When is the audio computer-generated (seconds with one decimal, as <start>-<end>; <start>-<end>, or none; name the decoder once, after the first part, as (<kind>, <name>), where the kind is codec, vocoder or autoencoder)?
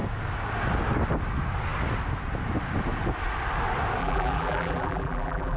4.0-5.6 (vocoder, BigVGAN v2)